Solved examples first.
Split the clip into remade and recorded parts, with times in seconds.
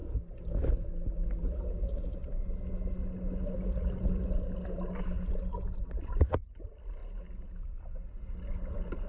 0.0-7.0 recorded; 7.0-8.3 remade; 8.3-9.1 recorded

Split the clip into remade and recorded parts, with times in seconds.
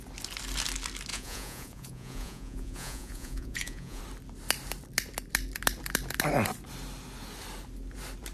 0.0-1.1 recorded; 1.1-4.0 remade; 4.0-8.3 recorded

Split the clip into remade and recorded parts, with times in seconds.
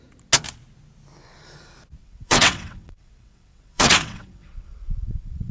0.0-2.0 recorded; 2.0-5.5 remade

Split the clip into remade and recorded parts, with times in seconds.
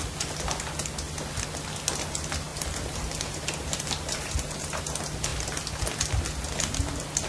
0.0-2.5 recorded; 2.5-4.8 remade; 4.8-7.3 recorded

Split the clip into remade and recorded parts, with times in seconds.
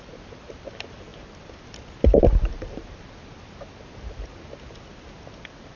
0.0-5.8 recorded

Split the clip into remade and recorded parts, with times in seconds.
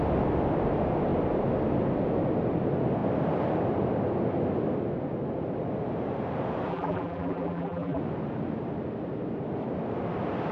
0.0-6.7 recorded; 6.7-8.0 remade; 8.0-10.5 recorded